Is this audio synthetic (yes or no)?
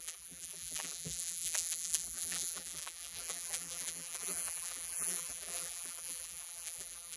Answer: yes